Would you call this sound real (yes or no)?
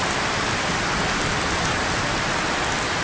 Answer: yes